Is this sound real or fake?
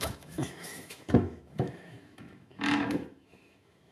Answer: fake